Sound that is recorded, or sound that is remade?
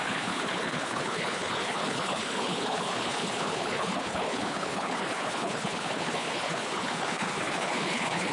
remade